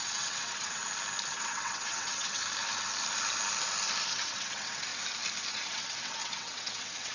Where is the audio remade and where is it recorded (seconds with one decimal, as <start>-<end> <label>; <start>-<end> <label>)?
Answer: 0.0-0.8 remade; 0.8-1.3 recorded; 1.3-2.4 remade; 2.4-4.1 recorded; 4.1-4.9 remade; 4.9-5.5 recorded; 5.5-7.1 remade